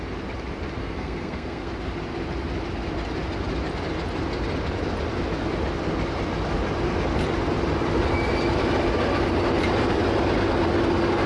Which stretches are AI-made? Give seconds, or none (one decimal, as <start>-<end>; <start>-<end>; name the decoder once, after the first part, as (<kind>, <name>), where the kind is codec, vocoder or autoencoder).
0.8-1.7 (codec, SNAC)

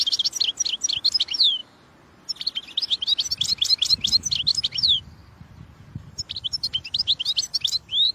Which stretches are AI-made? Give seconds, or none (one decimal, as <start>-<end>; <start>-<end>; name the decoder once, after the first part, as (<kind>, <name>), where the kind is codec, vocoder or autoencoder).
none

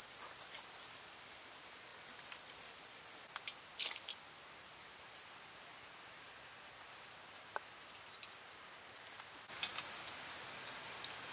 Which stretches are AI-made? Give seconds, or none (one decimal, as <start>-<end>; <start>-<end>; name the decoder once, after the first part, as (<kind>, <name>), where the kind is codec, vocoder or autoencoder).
none

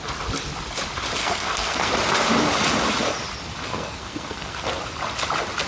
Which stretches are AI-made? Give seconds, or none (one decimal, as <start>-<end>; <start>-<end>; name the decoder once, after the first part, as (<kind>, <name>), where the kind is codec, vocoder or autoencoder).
1.2-1.9 (codec, SNAC); 3.6-4.8